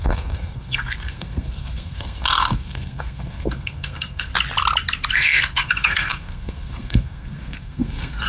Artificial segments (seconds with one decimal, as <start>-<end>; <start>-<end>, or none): 0.0-4.3; 5.1-8.3